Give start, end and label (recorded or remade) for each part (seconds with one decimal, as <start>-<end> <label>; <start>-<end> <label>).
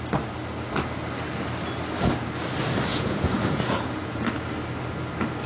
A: 0.0-2.9 recorded; 2.9-4.3 remade; 4.3-5.5 recorded